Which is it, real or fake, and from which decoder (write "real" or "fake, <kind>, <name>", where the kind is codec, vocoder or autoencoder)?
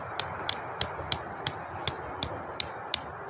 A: real